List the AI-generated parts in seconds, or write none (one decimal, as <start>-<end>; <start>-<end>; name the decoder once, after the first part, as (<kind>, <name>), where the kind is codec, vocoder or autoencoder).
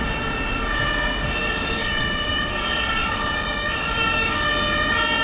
1.4-4.5 (codec, DAC)